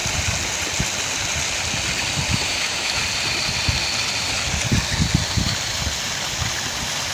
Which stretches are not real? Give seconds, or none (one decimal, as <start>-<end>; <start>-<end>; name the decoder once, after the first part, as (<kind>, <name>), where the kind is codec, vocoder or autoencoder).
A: 2.3-3.0 (autoencoder, DAC-VAE)